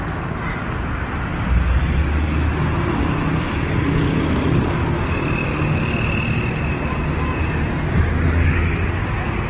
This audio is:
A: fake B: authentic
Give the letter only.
B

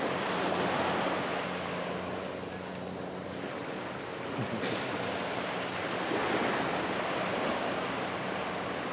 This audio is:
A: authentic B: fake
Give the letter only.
A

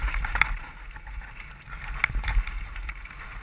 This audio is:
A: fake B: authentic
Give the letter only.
B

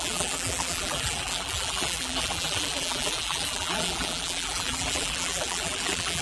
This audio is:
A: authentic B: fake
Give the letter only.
B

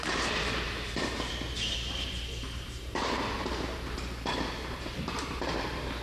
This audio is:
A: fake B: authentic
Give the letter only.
A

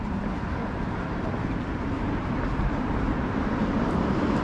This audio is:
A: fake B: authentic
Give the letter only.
A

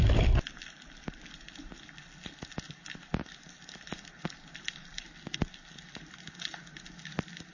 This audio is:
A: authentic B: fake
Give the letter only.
B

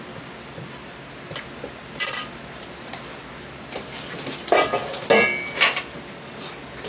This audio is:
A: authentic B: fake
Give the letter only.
A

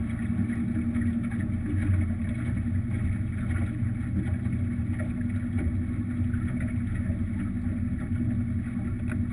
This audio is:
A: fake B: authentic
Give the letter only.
B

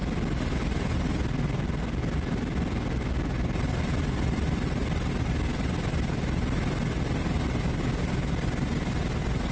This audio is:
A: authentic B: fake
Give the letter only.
A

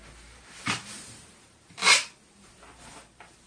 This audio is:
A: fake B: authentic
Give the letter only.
A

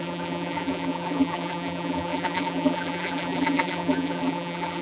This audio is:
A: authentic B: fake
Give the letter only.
B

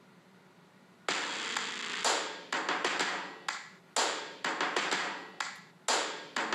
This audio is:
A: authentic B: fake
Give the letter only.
A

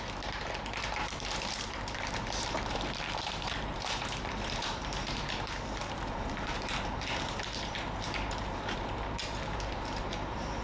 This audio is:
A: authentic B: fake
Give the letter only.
B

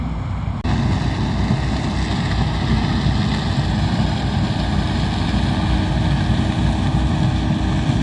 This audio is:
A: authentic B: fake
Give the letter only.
A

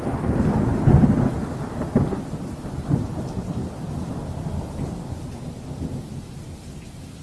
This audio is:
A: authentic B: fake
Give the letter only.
A